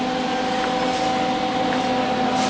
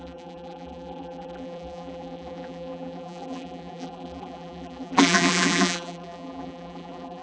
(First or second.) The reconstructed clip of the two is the second